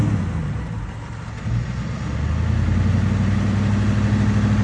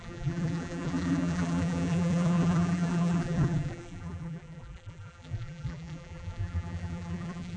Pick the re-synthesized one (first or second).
second